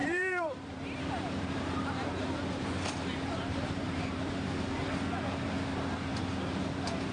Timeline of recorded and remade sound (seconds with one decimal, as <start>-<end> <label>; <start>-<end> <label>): 0.0-4.3 remade; 4.3-6.1 recorded; 6.1-7.1 remade